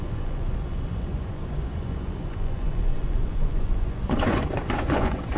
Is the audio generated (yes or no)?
yes